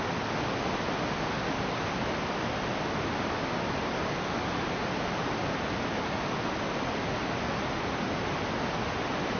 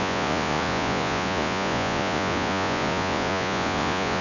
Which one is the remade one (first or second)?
second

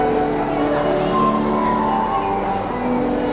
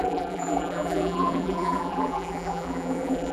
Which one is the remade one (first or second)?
second